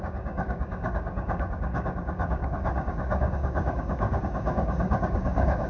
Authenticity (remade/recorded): remade